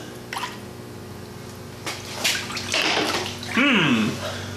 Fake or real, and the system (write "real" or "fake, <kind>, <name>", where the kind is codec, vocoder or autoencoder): real